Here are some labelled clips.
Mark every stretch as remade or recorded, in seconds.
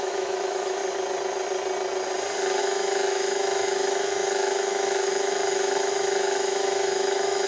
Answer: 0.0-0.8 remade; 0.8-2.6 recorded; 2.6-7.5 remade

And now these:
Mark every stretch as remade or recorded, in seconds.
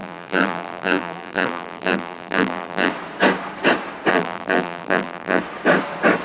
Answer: 0.0-2.9 remade; 2.9-4.1 recorded; 4.1-5.4 remade; 5.4-6.2 recorded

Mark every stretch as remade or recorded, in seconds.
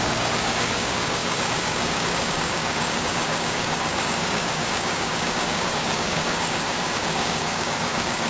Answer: 0.0-8.3 remade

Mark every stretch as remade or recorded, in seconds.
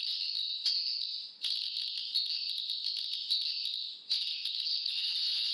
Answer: 0.0-4.3 recorded; 4.3-5.1 remade; 5.1-5.5 recorded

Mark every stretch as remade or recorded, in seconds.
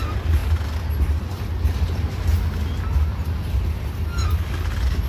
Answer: 0.0-5.1 recorded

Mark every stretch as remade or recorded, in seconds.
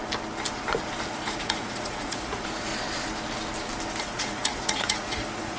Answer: 0.0-1.1 recorded; 1.1-2.7 remade; 2.7-4.0 recorded; 4.0-5.6 remade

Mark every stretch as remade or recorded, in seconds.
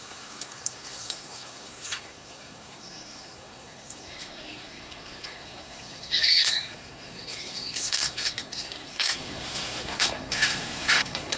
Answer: 0.0-11.4 remade